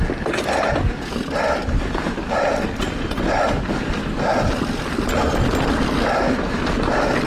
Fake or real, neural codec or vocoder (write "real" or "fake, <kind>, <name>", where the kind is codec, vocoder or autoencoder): real